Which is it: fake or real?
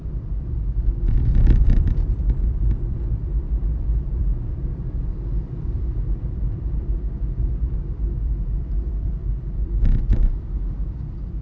fake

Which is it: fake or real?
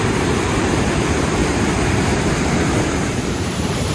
fake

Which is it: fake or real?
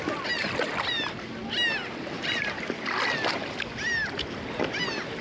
real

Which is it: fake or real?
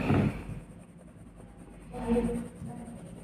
real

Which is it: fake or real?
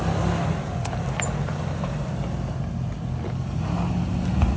real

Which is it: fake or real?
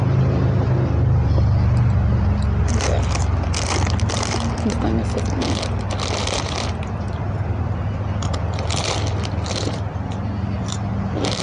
real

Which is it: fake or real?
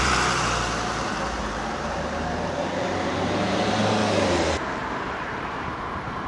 fake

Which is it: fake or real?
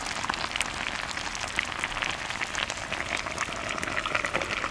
real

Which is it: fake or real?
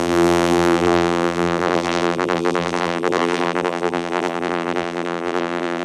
fake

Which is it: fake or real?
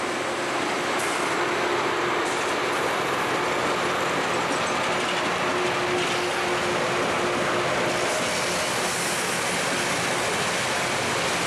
real